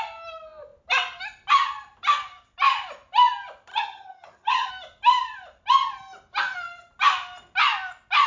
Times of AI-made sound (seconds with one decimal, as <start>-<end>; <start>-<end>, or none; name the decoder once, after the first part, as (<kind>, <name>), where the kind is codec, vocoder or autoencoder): 3.7-4.7 (vocoder, HiFi-GAN)